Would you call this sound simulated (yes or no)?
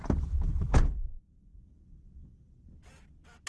no